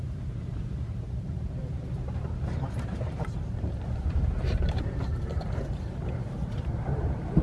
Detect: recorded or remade remade